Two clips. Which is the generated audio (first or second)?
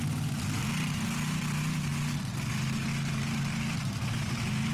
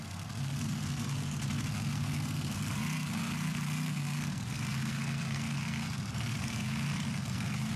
second